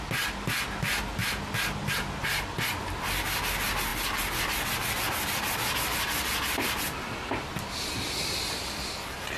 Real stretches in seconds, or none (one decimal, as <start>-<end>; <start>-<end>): 0.0-9.4